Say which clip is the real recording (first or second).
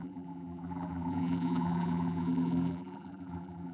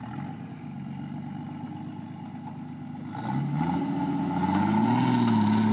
second